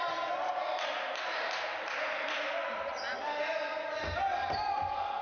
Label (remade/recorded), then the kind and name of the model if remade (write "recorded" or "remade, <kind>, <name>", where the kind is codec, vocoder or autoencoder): recorded